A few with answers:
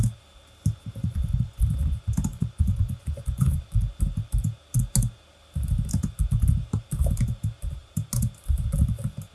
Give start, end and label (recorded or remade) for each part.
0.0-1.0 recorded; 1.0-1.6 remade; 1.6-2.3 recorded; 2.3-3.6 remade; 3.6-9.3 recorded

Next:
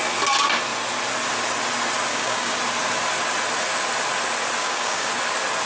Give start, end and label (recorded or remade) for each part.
0.0-2.1 recorded; 2.1-2.6 remade; 2.6-4.6 recorded; 4.6-5.1 remade; 5.1-5.7 recorded

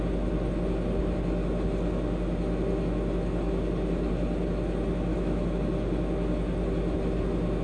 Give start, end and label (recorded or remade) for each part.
0.0-5.1 recorded; 5.1-5.6 remade; 5.6-7.6 recorded

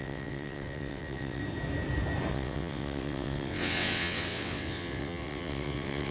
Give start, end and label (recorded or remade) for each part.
0.0-1.4 remade; 1.4-2.3 recorded; 2.3-6.1 remade

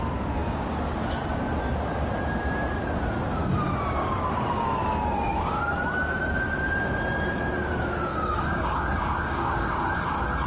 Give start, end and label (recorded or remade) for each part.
0.0-4.0 recorded; 4.0-5.6 remade; 5.6-8.1 recorded; 8.1-9.8 remade; 9.8-10.5 recorded

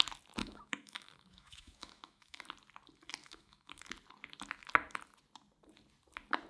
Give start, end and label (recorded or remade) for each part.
0.0-0.4 recorded; 0.4-2.4 remade; 2.4-3.2 recorded; 3.2-3.8 remade; 3.8-6.5 recorded

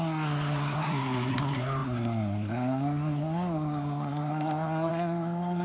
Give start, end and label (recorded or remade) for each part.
0.0-5.6 remade

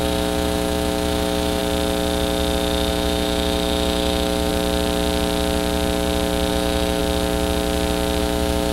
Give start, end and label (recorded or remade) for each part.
0.0-1.6 remade; 1.6-2.9 recorded; 2.9-4.5 remade; 4.5-6.5 recorded; 6.5-7.0 remade; 7.0-8.2 recorded; 8.2-8.7 remade